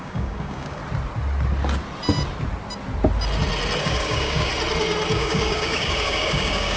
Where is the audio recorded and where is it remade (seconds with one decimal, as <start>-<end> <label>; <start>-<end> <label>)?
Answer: 0.0-0.8 remade; 0.8-3.8 recorded; 3.8-4.5 remade; 4.5-5.1 recorded; 5.1-6.8 remade